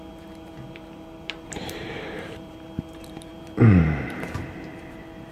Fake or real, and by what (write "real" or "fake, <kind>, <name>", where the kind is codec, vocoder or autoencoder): fake, vocoder, BigVGAN v2